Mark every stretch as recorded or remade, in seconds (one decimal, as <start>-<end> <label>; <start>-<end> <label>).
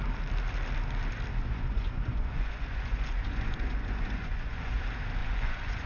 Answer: 0.0-1.3 recorded; 1.3-4.8 remade; 4.8-5.2 recorded; 5.2-5.9 remade